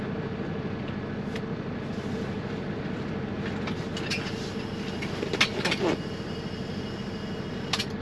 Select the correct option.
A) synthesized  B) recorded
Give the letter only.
B